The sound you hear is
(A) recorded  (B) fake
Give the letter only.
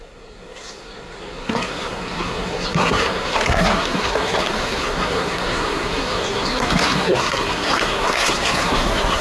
B